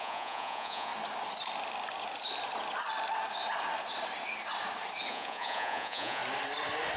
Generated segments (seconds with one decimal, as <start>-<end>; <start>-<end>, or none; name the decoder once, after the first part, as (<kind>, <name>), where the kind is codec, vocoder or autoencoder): 0.0-0.9 (vocoder, Vocos); 5.1-6.2